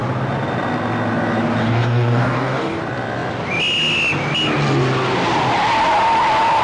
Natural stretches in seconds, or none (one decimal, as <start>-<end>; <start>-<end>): 0.0-1.6; 2.8-6.6